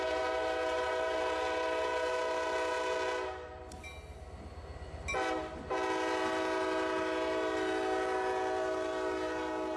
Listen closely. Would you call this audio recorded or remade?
recorded